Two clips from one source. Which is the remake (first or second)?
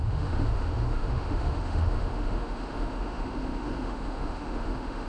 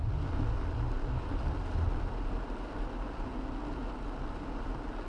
first